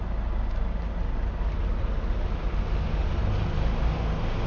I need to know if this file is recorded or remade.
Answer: recorded